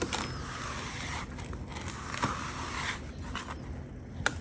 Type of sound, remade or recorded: recorded